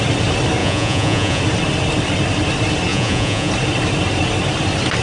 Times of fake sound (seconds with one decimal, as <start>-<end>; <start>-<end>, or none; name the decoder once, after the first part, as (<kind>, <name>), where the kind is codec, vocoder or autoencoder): 0.6-1.4 (vocoder, Vocos); 2.9-3.5